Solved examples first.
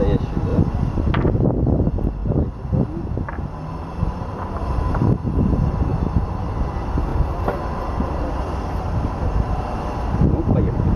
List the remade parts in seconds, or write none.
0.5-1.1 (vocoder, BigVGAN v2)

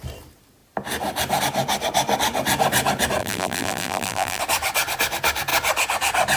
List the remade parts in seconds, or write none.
3.2-4.4 (vocoder, BigVGAN v2)

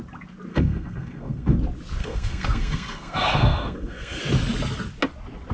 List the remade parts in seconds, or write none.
0.5-1.6 (codec, SNAC); 2.0-4.2

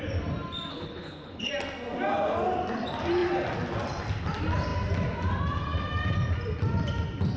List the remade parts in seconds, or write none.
0.7-1.5 (codec, HILCodec)

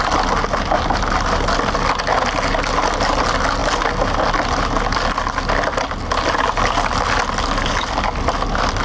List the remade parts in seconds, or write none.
none

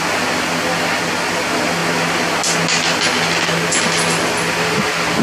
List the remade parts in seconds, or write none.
none

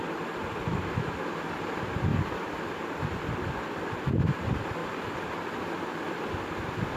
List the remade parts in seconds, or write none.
0.7-1.3 (autoencoder, DAC-VAE)

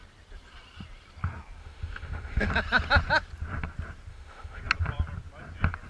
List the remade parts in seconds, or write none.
1.6-2.5 (autoencoder, DAC-VAE); 4.1-4.6